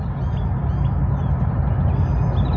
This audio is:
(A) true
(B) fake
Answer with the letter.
A